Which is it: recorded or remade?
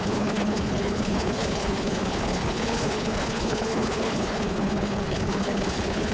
remade